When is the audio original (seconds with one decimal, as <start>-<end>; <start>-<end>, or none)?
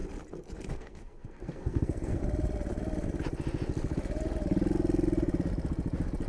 0.0-0.7; 2.2-6.3